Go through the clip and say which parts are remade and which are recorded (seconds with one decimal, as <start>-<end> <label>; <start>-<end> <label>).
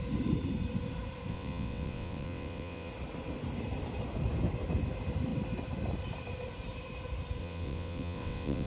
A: 0.0-1.3 recorded; 1.3-2.9 remade; 2.9-7.4 recorded; 7.4-8.7 remade